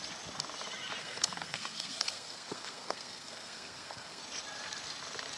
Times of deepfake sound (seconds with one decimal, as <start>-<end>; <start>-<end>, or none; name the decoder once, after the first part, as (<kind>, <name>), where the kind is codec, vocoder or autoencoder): 1.0-4.2 (codec, SNAC)